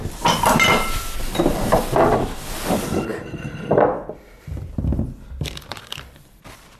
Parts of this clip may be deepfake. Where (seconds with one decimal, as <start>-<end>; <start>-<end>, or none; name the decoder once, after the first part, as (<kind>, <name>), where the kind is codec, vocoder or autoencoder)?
0.0-6.8 (vocoder, BigVGAN v2)